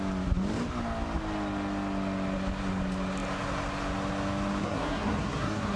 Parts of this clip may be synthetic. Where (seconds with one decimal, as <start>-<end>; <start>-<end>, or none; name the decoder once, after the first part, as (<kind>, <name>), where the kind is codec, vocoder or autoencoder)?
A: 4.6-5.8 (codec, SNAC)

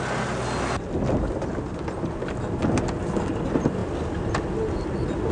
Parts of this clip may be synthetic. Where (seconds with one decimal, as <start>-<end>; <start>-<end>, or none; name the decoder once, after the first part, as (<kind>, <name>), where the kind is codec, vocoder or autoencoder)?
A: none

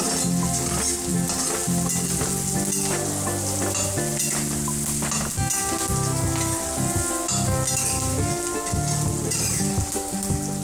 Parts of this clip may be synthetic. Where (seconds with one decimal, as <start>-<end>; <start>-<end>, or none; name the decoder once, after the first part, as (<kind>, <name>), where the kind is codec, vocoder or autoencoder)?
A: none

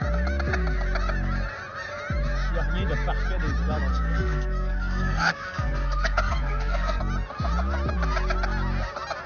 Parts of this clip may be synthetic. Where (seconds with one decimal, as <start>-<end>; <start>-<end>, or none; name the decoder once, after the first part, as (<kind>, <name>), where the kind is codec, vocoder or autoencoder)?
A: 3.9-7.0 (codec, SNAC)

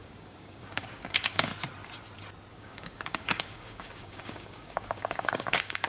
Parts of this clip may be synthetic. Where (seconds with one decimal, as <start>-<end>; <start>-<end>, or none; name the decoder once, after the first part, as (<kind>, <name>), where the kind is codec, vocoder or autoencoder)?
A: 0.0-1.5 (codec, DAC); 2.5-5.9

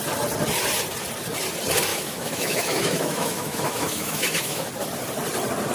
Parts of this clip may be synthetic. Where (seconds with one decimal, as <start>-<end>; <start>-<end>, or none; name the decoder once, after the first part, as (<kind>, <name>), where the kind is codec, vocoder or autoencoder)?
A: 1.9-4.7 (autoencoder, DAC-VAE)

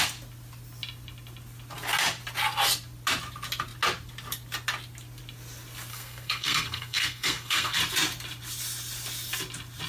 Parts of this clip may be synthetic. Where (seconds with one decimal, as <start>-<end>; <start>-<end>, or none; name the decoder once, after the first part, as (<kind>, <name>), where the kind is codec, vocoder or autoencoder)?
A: 5.9-7.8 (codec, SNAC)

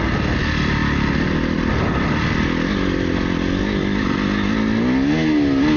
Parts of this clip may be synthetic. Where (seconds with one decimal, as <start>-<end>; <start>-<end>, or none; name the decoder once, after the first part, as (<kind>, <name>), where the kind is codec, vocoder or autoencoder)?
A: none